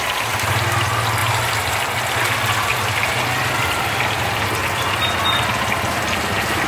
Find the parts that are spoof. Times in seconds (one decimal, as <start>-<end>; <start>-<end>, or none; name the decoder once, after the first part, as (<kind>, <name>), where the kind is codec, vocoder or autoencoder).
1.2-1.7 (vocoder, BigVGAN v2)

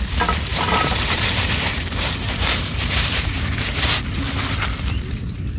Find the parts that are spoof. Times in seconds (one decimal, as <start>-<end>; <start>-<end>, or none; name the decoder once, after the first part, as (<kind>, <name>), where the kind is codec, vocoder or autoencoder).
0.5-3.9 (vocoder, BigVGAN v2)